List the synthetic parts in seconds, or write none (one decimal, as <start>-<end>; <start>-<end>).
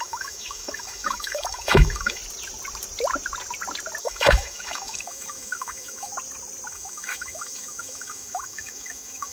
0.0-2.2; 4.0-6.1; 6.7-9.3